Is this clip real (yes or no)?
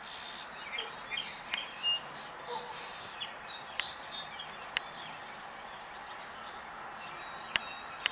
yes